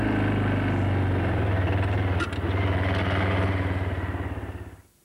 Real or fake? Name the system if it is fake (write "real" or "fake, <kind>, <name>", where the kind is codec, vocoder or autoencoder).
real